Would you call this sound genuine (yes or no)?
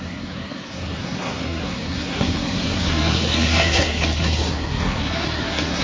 no